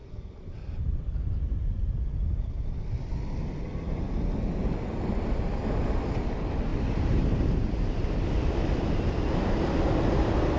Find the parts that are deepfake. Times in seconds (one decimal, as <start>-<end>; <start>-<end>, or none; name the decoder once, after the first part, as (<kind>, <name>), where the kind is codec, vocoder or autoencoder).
0.0-1.9 (vocoder, BigVGAN v2); 6.7-8.2